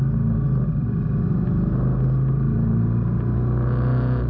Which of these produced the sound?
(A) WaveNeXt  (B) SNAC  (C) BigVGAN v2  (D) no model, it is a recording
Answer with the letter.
D